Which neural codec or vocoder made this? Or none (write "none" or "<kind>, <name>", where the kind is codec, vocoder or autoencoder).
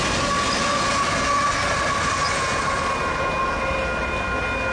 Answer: none